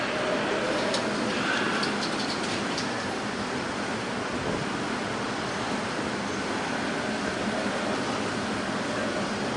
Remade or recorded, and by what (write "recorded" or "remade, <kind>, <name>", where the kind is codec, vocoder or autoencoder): recorded